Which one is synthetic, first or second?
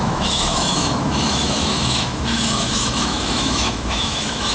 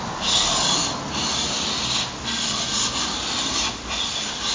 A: first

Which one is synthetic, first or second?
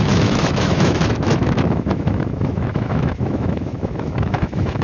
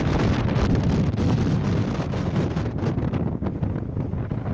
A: first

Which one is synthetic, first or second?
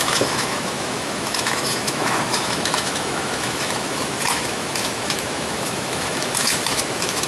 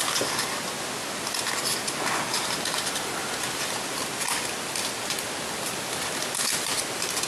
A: first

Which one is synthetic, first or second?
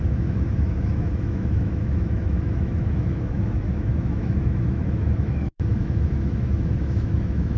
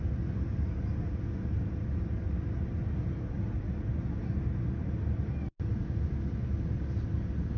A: first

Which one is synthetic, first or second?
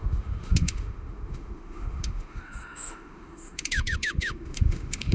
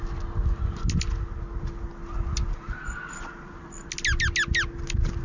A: first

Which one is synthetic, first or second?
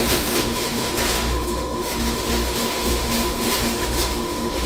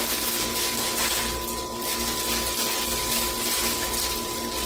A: first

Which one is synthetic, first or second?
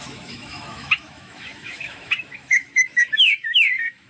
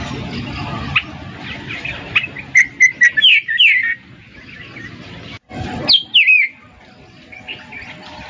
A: first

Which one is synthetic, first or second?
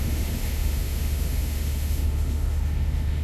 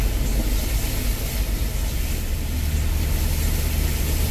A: first